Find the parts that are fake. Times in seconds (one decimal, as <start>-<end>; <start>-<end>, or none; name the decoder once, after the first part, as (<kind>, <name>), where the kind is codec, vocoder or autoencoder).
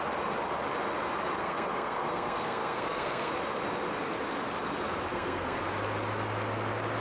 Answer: 1.4-3.3 (codec, SNAC); 5.1-5.6